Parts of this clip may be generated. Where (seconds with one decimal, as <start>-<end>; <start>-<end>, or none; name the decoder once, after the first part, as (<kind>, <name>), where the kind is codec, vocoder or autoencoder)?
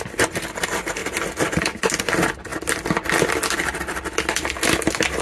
none